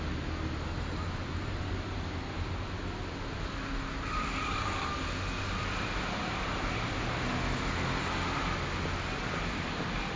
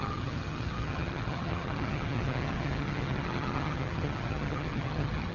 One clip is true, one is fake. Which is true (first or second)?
first